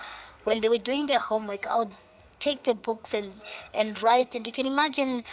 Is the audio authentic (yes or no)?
no